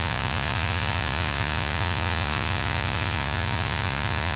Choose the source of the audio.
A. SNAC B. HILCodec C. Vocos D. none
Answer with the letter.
C